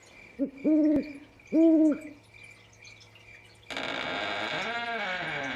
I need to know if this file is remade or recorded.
recorded